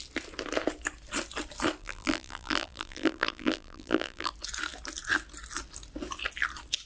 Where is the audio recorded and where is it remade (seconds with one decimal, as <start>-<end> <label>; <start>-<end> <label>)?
0.0-1.8 recorded; 1.8-4.3 remade; 4.3-6.9 recorded